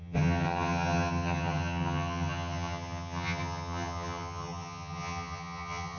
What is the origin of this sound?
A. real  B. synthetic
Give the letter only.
B